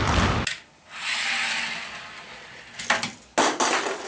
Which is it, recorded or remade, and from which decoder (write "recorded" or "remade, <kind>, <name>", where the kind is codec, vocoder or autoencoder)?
recorded